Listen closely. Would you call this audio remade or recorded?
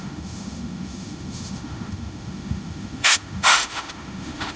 remade